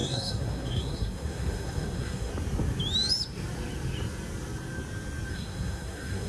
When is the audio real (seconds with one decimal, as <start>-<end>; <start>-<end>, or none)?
2.3-5.3